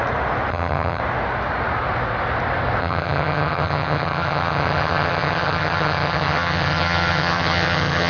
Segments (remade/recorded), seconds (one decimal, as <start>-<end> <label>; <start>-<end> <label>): 0.0-0.5 recorded; 0.5-1.0 remade; 1.0-2.8 recorded; 2.8-8.1 remade